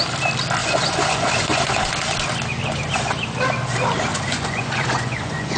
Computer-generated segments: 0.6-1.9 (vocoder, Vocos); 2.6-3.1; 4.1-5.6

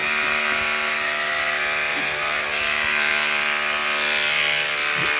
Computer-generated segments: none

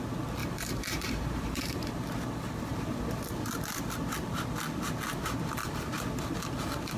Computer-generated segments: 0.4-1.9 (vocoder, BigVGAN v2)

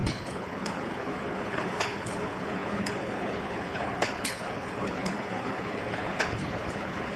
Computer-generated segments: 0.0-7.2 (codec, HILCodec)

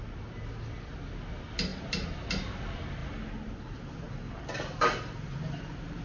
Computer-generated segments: none

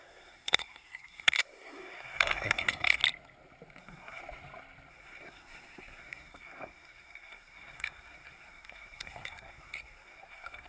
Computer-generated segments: 0.0-3.0 (codec, SNAC); 3.8-4.2; 4.9-10.7

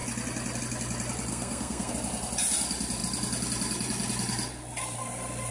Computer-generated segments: 1.3-1.9 (codec, SNAC)